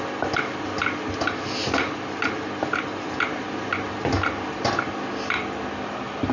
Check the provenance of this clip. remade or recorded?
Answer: recorded